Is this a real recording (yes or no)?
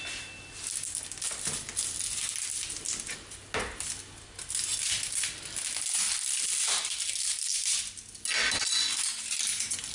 yes